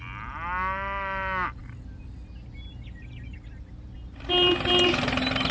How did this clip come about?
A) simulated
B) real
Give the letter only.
B